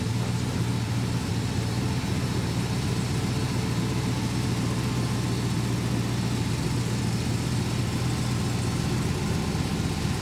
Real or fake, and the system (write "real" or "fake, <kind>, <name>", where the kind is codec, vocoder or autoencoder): real